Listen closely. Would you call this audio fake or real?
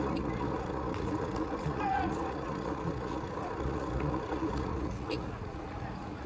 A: fake